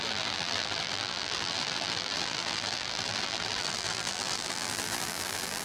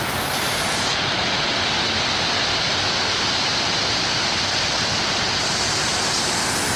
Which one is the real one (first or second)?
second